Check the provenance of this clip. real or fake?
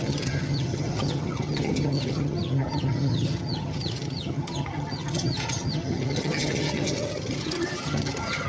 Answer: fake